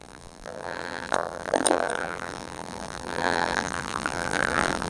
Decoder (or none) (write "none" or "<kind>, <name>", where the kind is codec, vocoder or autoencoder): vocoder, BigVGAN v2